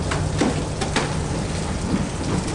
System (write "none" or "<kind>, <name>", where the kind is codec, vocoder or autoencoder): none